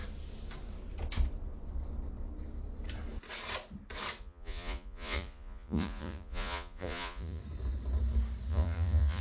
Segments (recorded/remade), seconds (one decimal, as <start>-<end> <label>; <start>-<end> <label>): 0.0-4.2 recorded; 4.2-7.4 remade; 7.4-8.5 recorded; 8.5-9.2 remade